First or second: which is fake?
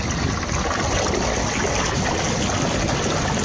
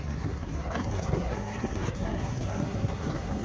second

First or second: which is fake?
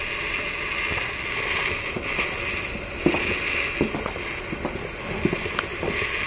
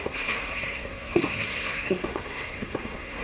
second